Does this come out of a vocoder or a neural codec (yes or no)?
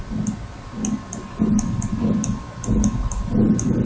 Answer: no